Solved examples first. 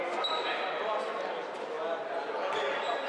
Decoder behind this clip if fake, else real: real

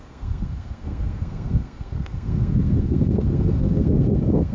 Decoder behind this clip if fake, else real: fake, codec, SNAC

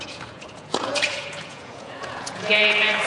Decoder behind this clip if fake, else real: fake, vocoder, Vocos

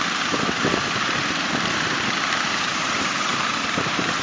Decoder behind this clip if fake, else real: fake, vocoder, BigVGAN v2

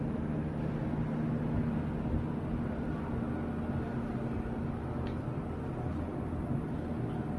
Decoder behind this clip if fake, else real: real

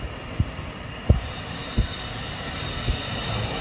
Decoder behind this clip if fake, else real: real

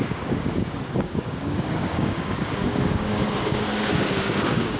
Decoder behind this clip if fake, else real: fake, codec, DAC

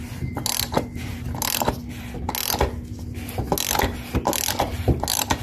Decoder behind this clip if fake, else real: real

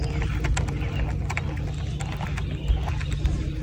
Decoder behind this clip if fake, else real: real